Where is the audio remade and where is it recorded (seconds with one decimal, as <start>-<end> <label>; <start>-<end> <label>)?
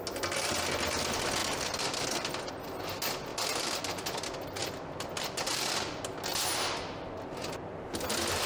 0.0-3.3 recorded; 3.3-3.8 remade; 3.8-4.6 recorded; 4.6-6.0 remade; 6.0-8.5 recorded